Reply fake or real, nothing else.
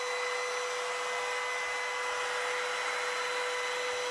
real